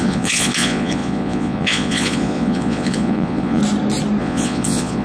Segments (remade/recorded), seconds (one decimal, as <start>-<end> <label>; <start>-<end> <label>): 0.0-3.6 remade; 3.6-4.2 recorded; 4.2-5.0 remade